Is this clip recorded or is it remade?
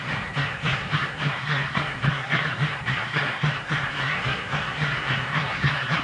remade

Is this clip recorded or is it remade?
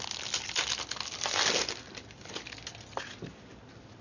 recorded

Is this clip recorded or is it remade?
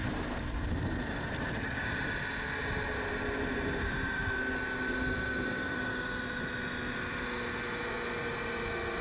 recorded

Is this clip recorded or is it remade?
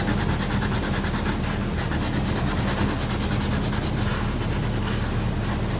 recorded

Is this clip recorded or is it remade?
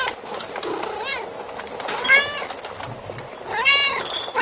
recorded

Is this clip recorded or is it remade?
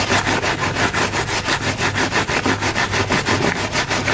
recorded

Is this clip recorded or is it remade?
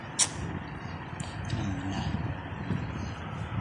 recorded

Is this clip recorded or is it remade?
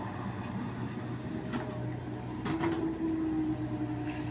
recorded